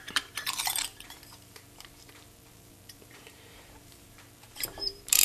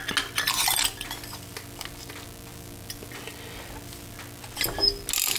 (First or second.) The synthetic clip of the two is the first